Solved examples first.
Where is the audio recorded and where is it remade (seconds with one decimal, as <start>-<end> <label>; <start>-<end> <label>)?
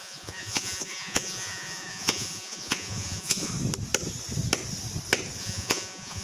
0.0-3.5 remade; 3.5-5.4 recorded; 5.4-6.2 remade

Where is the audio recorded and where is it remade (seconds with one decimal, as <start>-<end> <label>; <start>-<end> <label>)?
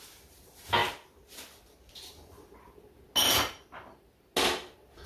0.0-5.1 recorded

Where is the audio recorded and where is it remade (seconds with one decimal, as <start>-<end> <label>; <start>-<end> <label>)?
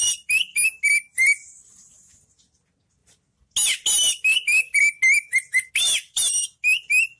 0.0-7.2 recorded